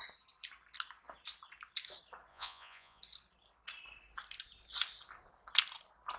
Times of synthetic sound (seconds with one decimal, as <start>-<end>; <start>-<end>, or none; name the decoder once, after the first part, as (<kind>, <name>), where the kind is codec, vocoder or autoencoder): 2.3-3.0 (vocoder, Vocos)